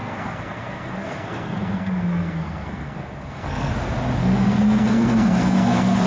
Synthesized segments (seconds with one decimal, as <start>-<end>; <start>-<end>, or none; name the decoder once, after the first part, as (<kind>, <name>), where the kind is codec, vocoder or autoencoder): 0.0-3.7 (codec, SNAC); 4.2-6.1